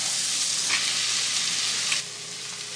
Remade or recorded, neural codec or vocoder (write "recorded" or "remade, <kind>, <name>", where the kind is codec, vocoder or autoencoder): recorded